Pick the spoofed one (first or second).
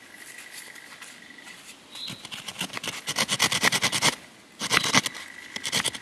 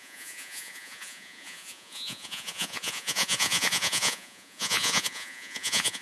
second